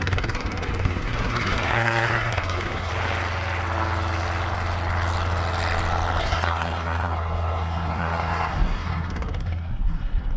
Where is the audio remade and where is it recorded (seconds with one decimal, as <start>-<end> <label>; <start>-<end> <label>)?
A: 0.0-2.9 remade; 2.9-6.2 recorded; 6.2-10.4 remade